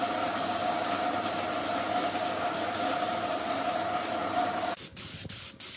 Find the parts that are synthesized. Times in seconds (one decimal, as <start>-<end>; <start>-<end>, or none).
1.9-3.1